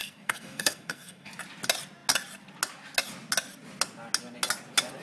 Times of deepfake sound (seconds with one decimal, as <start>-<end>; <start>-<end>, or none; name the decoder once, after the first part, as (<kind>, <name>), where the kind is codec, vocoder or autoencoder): 0.0-1.3 (codec, SNAC)

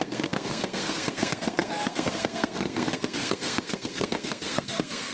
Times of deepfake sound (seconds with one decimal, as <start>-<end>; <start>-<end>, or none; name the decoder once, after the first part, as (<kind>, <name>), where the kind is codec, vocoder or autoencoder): 0.0-5.1 (codec, SNAC)

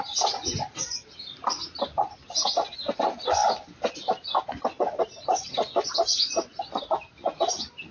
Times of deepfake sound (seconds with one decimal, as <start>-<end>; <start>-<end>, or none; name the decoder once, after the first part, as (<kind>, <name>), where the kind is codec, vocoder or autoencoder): none